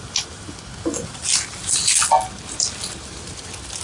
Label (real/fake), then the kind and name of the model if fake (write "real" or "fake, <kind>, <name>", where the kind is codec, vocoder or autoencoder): real